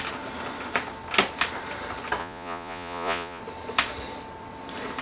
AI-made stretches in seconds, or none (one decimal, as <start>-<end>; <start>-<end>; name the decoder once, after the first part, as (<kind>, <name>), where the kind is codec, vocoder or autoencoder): 2.2-3.4 (vocoder, Vocos)